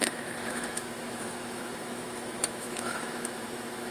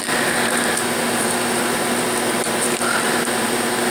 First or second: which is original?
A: second